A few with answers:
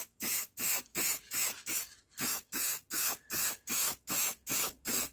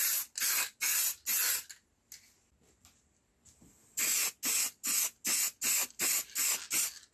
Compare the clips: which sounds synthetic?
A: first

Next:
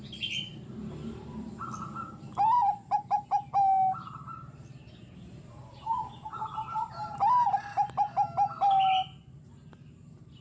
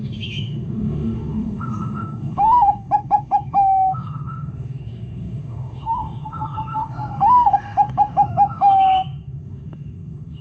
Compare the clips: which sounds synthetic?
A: second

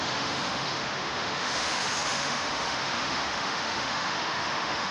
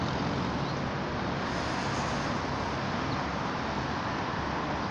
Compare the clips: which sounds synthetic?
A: first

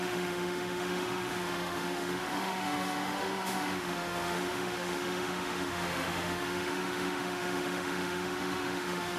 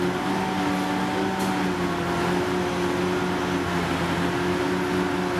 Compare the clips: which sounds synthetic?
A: first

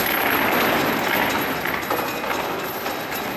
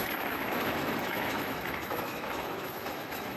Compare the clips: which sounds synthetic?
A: second